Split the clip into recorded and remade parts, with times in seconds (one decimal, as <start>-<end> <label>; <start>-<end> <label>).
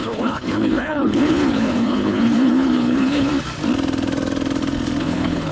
0.0-3.3 remade; 3.3-5.0 recorded; 5.0-5.5 remade